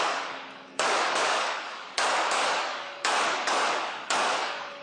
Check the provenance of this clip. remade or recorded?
remade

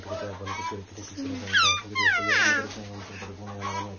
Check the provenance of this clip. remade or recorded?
recorded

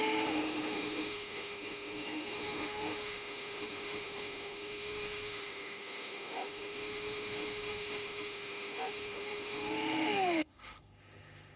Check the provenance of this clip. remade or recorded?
remade